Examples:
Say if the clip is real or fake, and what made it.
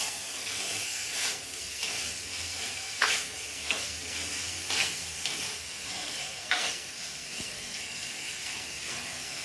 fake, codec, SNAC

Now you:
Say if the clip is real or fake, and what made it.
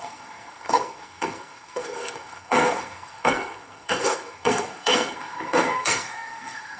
fake, codec, SNAC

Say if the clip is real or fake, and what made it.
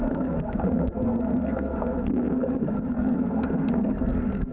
fake, codec, SNAC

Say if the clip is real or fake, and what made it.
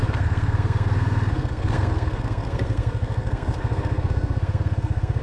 fake, codec, SNAC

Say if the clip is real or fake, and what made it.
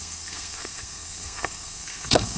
fake, codec, SNAC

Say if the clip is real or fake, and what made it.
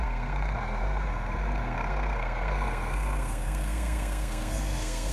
fake, codec, SNAC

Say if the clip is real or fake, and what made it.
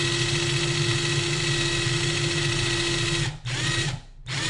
real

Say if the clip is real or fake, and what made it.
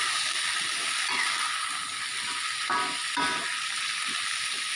real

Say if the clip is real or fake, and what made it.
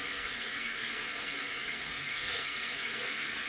fake, codec, SNAC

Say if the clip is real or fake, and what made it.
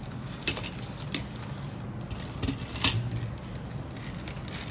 real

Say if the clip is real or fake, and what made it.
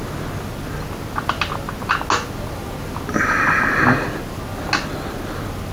real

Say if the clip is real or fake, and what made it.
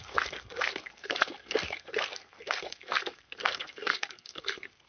fake, codec, SNAC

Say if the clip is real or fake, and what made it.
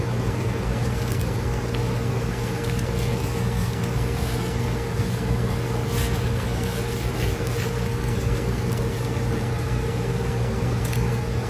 fake, codec, SNAC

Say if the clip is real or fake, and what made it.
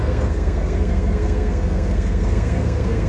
fake, codec, SNAC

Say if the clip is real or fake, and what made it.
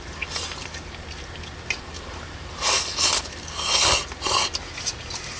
real